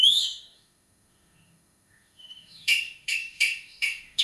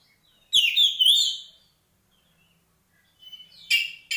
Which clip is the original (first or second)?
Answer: second